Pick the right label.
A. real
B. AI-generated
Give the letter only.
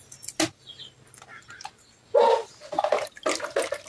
A